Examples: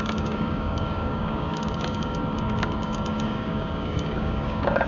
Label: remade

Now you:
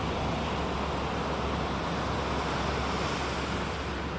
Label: recorded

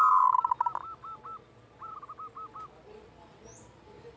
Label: recorded